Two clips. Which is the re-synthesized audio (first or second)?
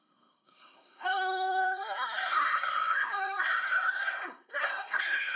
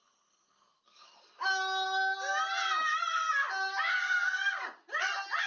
first